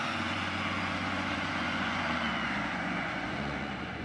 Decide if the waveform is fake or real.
fake